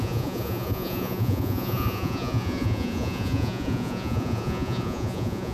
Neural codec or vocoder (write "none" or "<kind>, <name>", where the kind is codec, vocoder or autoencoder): vocoder, Vocos